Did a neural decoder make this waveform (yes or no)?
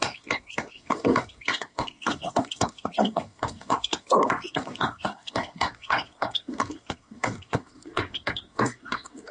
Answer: yes